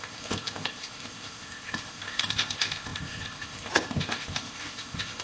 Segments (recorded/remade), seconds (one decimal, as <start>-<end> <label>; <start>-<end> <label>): 0.0-5.2 remade